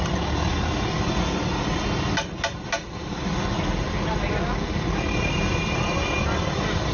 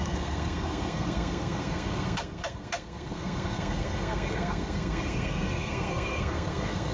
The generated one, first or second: second